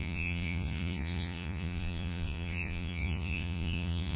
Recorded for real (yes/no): no